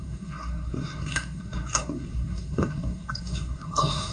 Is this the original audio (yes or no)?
no